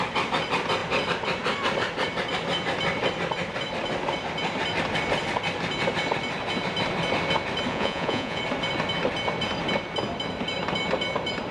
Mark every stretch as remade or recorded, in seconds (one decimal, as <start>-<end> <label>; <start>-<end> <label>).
0.0-7.7 recorded; 7.7-8.4 remade; 8.4-11.5 recorded